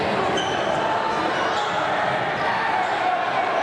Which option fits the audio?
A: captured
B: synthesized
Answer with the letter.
A